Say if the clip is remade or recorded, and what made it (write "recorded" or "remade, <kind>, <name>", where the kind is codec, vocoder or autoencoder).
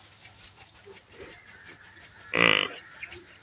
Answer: recorded